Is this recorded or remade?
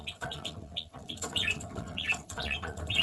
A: remade